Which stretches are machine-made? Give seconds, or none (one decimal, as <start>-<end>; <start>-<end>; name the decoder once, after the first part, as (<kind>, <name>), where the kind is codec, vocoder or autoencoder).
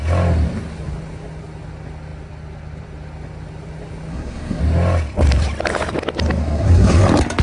4.1-4.6 (codec, SNAC); 6.4-7.0